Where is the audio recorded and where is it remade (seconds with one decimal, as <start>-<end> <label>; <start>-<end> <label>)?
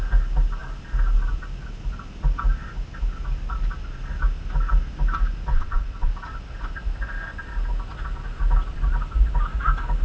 0.0-5.5 recorded; 5.5-6.1 remade; 6.1-10.0 recorded